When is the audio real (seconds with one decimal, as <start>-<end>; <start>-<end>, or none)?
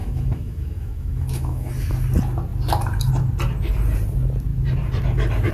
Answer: 1.7-5.5